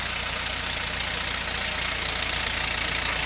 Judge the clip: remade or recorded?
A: recorded